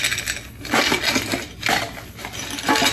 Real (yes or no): yes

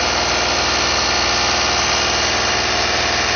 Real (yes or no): yes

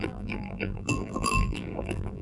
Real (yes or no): no